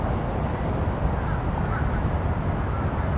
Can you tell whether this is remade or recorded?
recorded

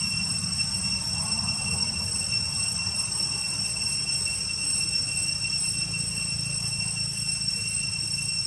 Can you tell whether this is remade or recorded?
recorded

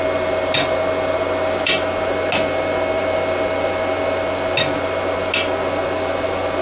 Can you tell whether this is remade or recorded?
recorded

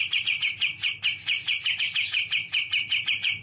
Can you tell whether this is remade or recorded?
recorded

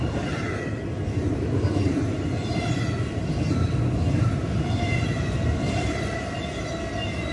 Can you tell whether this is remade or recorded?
recorded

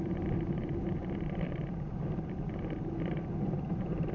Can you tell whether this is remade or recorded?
remade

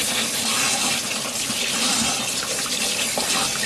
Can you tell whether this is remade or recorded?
recorded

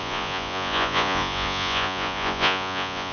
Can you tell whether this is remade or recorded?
remade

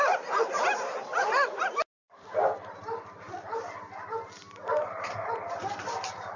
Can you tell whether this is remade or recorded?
recorded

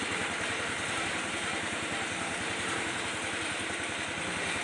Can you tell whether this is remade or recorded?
remade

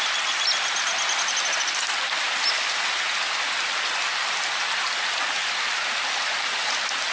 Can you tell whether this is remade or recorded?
recorded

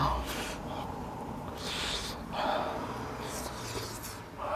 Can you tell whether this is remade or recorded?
recorded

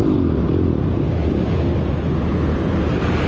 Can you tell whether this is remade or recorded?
recorded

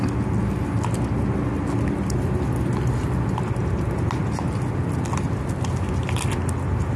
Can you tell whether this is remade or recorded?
recorded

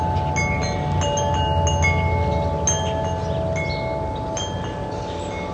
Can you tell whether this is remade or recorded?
recorded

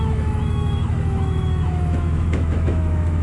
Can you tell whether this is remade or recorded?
remade